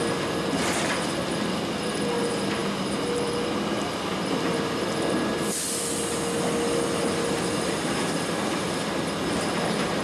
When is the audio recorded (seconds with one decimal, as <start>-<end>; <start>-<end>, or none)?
0.0-2.6; 3.3-9.2